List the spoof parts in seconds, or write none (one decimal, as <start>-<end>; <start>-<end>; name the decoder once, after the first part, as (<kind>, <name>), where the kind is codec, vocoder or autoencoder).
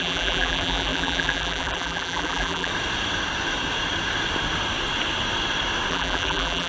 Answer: 0.0-2.7 (vocoder, BigVGAN v2); 5.9-6.7